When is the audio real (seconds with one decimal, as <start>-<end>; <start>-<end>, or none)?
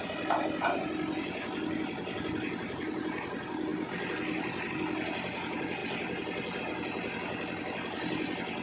0.0-8.6